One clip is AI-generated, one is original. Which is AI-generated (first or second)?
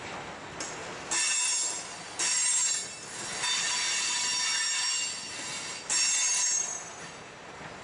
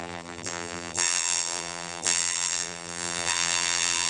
second